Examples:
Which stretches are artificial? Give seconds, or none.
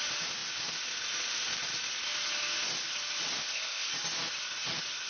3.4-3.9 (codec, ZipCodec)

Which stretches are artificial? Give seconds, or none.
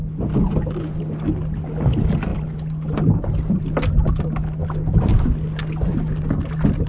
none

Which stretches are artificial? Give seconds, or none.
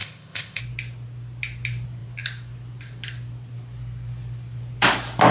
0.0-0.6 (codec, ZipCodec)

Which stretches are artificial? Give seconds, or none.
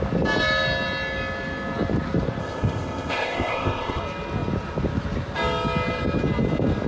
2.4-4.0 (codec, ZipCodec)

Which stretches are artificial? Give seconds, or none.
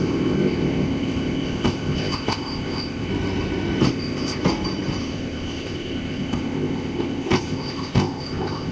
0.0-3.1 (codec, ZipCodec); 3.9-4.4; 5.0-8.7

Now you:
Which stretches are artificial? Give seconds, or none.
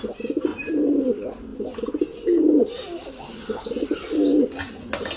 none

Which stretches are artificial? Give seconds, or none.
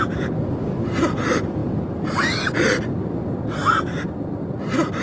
none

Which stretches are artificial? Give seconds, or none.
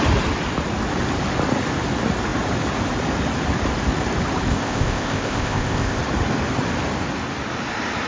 4.5-6.0 (codec, ZipCodec)